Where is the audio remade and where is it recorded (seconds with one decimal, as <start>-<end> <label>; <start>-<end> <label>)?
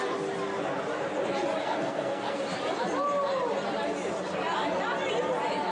0.0-1.6 recorded; 1.6-2.4 remade; 2.4-5.7 recorded